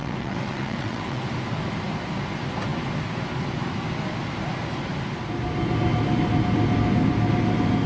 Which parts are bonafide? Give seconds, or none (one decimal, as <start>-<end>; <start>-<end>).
1.2-7.9